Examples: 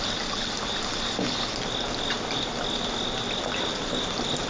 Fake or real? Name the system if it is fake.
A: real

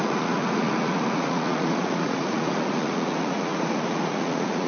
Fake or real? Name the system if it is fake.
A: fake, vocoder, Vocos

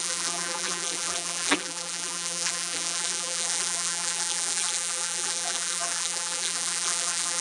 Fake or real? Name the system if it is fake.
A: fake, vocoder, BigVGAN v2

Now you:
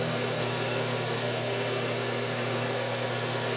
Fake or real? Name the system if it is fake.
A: fake, codec, SNAC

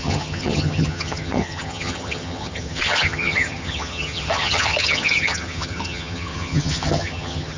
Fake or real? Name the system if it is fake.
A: fake, vocoder, HiFi-GAN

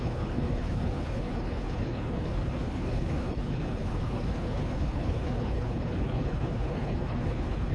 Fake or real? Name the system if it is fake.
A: fake, codec, HILCodec